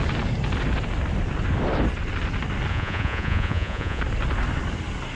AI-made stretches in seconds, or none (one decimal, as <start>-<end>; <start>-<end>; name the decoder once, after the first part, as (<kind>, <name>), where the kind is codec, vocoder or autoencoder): 2.7-4.0 (vocoder, Vocos)